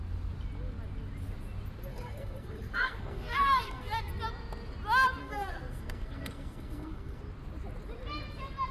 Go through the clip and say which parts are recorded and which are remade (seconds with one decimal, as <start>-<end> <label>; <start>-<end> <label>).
0.0-1.9 recorded; 1.9-4.1 remade; 4.1-5.2 recorded; 5.2-7.2 remade; 7.2-8.7 recorded